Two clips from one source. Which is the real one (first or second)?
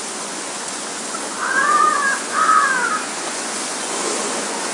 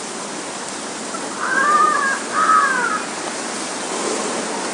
second